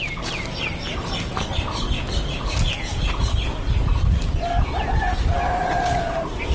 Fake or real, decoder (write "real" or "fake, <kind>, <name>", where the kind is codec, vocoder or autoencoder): real